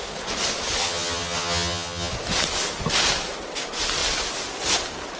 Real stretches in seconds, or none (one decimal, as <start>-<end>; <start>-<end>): 0.0-0.8; 2.1-5.2